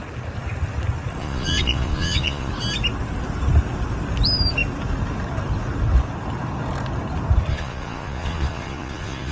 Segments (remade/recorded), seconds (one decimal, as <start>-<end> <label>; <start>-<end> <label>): 0.0-1.2 recorded; 1.2-2.5 remade; 2.5-7.5 recorded; 7.5-9.3 remade